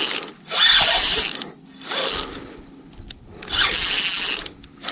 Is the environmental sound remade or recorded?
recorded